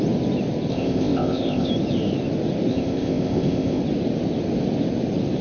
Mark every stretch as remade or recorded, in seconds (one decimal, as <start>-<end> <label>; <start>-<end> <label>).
0.0-0.7 recorded; 0.7-1.7 remade; 1.7-2.7 recorded; 2.7-3.8 remade; 3.8-5.4 recorded